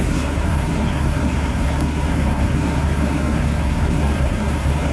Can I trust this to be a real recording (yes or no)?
no